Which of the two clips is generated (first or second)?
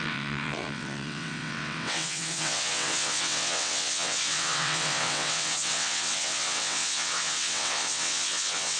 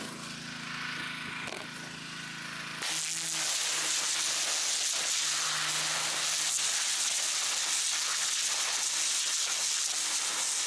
first